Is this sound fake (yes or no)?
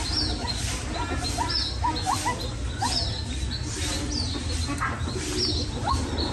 no